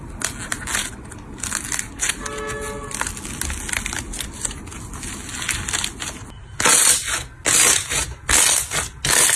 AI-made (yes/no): no